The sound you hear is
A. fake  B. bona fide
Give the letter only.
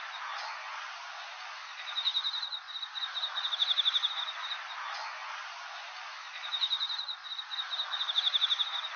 B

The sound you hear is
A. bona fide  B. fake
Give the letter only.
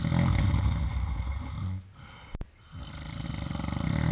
A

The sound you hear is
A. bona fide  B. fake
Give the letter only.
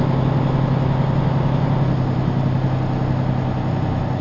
A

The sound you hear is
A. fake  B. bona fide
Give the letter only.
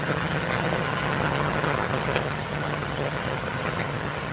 A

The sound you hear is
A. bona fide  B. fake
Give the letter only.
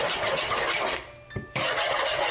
A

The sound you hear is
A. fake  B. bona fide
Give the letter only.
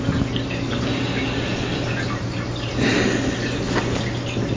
B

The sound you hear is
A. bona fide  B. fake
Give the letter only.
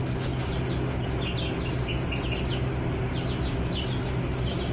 A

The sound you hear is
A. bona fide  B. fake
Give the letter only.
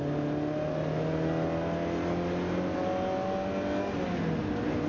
A